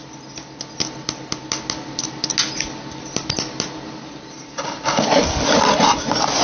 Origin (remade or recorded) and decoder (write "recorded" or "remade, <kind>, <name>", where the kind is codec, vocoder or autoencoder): recorded